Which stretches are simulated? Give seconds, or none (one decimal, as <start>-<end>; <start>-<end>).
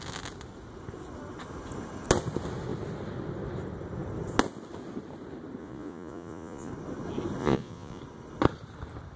5.6-6.7; 7.4-8.0